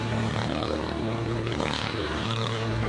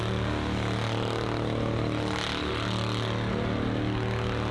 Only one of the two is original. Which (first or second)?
second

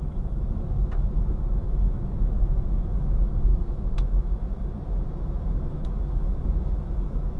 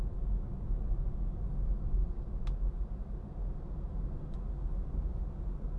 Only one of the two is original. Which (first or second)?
second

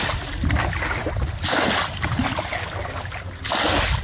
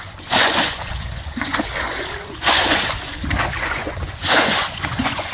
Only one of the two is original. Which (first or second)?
first